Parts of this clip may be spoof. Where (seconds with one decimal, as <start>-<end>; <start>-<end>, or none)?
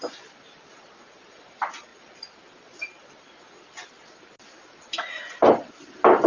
none